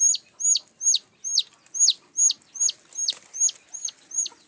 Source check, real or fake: real